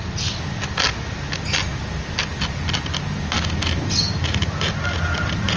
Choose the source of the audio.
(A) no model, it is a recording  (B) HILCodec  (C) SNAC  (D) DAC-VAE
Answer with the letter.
A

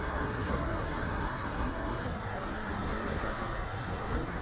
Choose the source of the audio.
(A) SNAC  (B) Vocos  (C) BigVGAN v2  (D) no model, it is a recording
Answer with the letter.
A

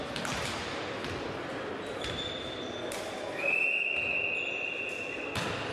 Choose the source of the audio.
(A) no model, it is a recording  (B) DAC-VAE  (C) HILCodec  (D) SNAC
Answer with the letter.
A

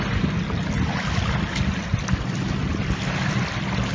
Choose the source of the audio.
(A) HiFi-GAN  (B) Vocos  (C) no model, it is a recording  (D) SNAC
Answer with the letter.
C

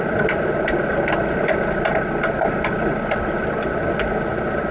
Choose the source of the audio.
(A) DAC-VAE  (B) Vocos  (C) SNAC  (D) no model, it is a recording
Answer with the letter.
D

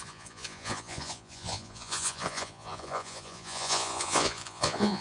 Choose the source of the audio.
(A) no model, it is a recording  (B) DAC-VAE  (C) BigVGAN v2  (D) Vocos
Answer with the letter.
D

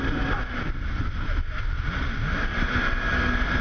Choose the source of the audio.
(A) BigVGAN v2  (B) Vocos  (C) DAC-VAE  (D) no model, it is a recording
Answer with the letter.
D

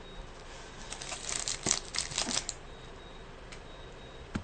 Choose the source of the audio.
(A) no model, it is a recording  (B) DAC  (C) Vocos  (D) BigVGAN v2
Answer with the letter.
A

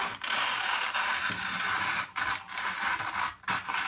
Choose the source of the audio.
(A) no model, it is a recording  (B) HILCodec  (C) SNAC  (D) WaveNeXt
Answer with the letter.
A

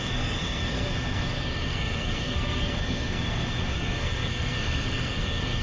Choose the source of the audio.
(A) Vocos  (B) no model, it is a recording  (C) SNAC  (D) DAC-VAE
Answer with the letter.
C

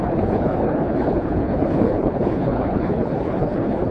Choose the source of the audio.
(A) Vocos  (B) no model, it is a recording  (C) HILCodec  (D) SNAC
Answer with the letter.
C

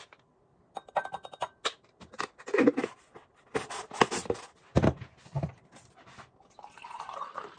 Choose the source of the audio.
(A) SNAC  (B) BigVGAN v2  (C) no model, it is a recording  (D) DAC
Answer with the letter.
C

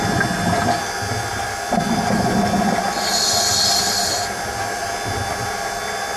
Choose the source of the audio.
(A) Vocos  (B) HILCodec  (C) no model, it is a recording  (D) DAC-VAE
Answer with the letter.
C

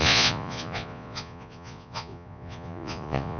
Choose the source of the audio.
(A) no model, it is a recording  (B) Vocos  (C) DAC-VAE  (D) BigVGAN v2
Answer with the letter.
B